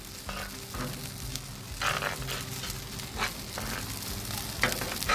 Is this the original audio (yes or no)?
yes